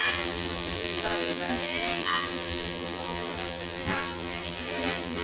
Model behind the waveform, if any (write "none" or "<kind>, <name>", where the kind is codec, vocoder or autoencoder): vocoder, BigVGAN v2